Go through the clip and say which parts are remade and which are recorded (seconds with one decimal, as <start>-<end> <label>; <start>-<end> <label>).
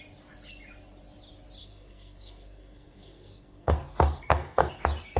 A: 0.0-1.6 recorded; 1.6-4.7 remade; 4.7-5.2 recorded